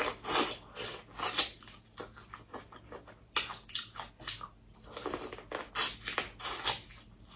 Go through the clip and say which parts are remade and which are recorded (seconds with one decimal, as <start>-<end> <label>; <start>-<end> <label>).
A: 0.0-7.4 recorded